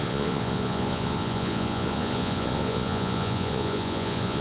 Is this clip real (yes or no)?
no